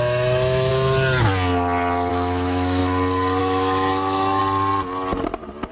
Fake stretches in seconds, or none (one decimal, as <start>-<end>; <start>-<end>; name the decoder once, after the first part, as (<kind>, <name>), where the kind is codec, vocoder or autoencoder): 0.0-0.7 (autoencoder, DAC-VAE); 2.1-2.8; 3.4-4.4